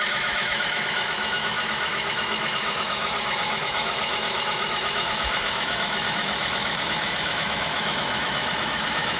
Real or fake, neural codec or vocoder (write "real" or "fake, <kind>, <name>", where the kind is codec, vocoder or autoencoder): fake, autoencoder, DAC-VAE